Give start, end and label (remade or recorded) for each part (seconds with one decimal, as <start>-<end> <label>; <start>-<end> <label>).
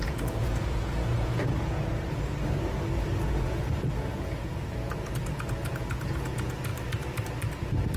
0.0-1.9 remade; 1.9-3.2 recorded; 3.2-6.7 remade; 6.7-8.0 recorded